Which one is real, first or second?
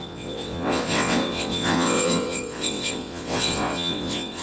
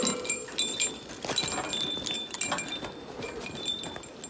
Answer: second